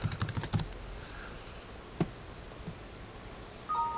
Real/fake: real